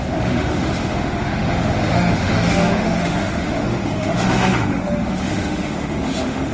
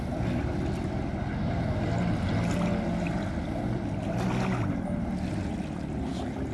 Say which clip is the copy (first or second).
first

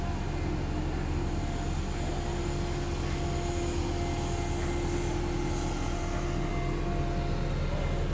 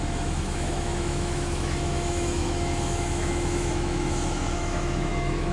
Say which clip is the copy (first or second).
second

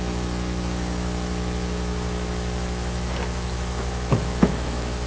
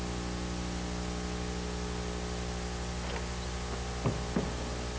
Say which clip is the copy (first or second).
first